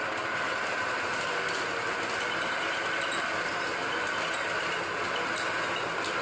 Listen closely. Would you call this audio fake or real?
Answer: real